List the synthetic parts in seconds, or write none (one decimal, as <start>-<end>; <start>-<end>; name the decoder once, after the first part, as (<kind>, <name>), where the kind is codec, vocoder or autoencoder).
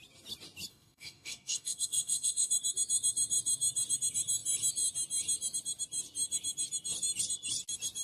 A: 0.7-2.5 (codec, DAC)